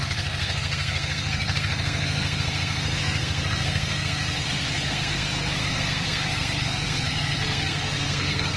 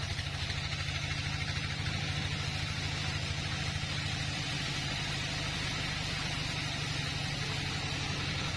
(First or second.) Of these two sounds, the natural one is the second